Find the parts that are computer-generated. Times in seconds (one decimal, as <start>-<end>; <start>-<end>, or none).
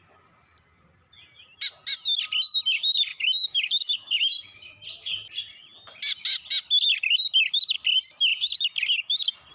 3.1-4.7